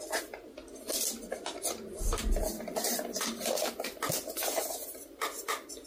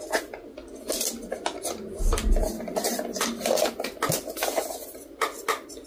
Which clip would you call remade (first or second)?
first